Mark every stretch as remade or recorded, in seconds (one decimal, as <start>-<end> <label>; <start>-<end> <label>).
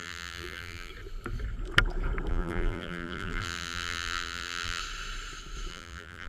0.0-0.9 remade; 0.9-2.3 recorded; 2.3-4.8 remade; 4.8-5.7 recorded; 5.7-6.3 remade